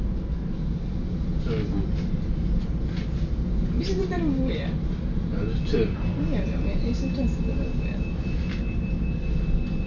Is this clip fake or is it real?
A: real